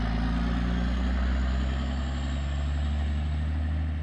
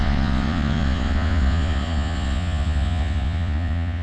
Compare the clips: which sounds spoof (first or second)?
second